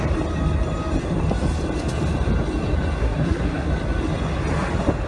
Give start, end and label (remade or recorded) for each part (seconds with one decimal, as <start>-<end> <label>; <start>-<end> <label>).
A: 0.0-3.0 recorded; 3.0-3.7 remade; 3.7-5.1 recorded

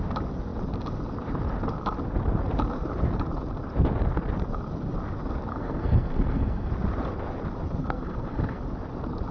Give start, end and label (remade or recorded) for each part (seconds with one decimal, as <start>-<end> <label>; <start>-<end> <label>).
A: 0.0-5.5 recorded; 5.5-6.7 remade; 6.7-7.8 recorded; 7.8-8.6 remade; 8.6-9.3 recorded

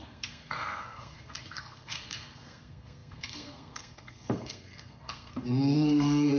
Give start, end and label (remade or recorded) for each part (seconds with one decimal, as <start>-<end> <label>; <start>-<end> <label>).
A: 0.0-6.4 remade

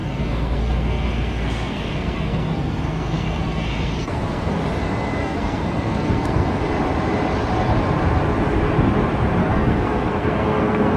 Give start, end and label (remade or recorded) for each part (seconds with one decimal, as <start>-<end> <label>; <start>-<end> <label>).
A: 0.0-4.6 remade; 4.6-5.2 recorded; 5.2-6.6 remade; 6.6-9.4 recorded; 9.4-11.0 remade